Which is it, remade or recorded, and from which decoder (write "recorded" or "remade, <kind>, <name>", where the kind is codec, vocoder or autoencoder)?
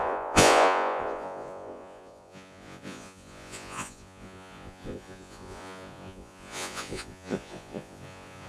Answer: remade, vocoder, Vocos